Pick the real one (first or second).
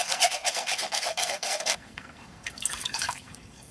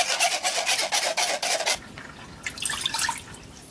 second